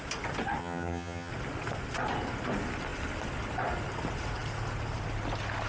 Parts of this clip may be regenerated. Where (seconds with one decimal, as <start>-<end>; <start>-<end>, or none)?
0.6-1.3